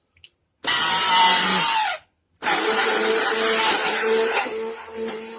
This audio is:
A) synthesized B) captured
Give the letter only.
B